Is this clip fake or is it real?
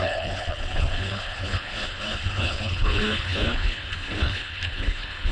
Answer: fake